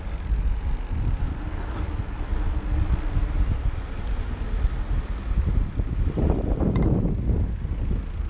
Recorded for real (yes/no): yes